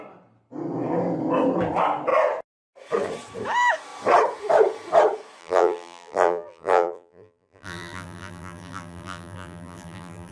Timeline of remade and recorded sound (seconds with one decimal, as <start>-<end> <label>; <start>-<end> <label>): 0.0-5.4 recorded; 5.4-10.3 remade